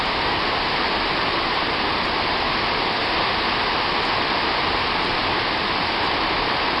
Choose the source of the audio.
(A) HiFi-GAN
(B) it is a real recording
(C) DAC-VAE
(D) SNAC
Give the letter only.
B